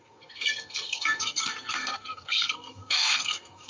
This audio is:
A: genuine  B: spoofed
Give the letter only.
B